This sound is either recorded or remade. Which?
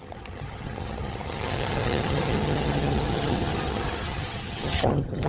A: remade